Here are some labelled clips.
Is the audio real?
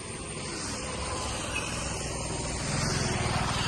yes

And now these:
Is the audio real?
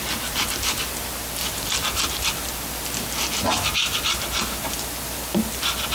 yes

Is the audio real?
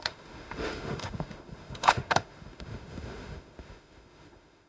no